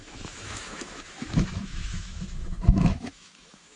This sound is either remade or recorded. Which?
remade